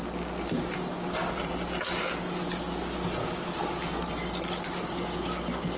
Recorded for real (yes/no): yes